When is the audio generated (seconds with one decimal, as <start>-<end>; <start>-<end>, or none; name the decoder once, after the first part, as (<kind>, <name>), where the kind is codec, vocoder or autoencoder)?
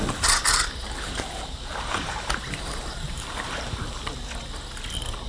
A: 0.8-4.0 (vocoder, BigVGAN v2)